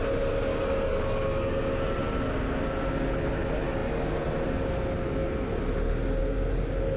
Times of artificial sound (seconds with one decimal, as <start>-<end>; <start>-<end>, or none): 0.5-1.7